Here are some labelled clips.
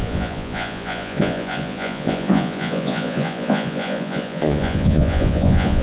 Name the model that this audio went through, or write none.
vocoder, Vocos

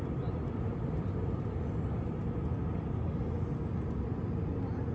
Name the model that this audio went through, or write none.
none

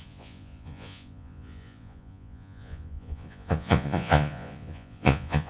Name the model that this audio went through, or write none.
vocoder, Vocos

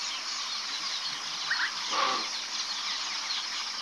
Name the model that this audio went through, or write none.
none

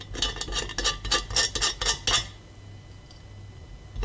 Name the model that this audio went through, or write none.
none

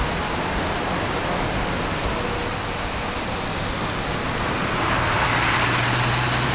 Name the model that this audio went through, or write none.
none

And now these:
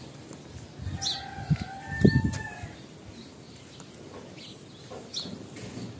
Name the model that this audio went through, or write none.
none